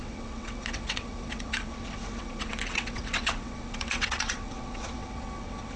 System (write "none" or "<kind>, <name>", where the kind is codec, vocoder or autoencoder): vocoder, WaveNeXt